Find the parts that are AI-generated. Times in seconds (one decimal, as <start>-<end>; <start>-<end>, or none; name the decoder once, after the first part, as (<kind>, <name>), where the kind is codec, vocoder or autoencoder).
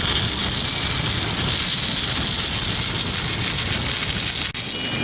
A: none